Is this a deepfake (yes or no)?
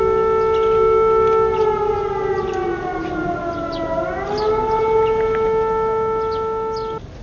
no